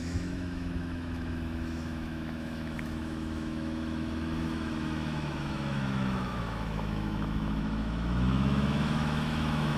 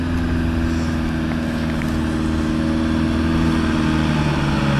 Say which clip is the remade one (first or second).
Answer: first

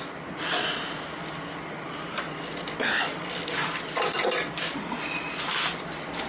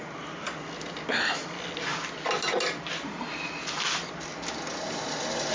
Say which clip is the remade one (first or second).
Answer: first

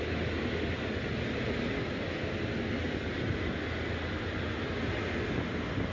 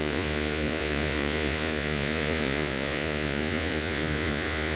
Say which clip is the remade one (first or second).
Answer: second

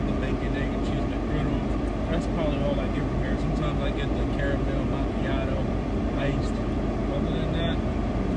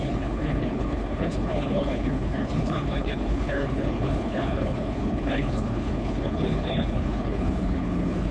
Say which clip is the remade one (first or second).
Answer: second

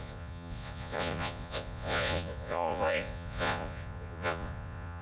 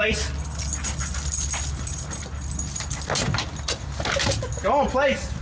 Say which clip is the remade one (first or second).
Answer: first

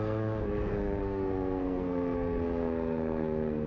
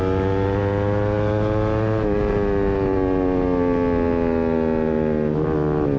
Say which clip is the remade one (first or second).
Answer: first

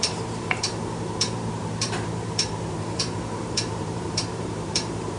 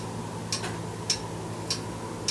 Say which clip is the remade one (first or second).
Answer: first